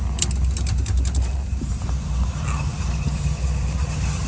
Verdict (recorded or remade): recorded